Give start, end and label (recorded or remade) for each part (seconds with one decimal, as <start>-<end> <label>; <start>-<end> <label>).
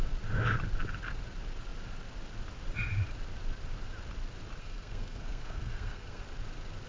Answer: 0.0-4.6 recorded; 4.6-6.2 remade; 6.2-6.9 recorded